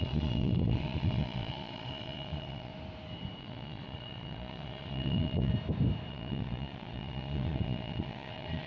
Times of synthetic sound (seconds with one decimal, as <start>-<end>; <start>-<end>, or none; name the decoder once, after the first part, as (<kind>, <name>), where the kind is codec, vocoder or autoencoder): 0.0-2.7 (vocoder, Vocos); 3.4-5.5; 6.1-8.7